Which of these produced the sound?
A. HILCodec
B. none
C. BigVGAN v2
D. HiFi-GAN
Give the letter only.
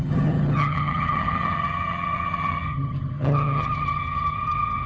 D